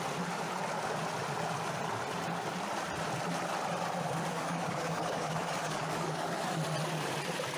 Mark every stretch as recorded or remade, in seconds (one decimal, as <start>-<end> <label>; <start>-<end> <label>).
0.0-4.3 recorded; 4.3-6.4 remade; 6.4-7.6 recorded